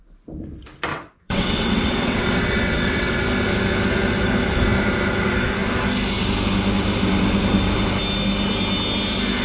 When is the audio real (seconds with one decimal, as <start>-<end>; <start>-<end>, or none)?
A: 0.0-0.9; 3.2-9.4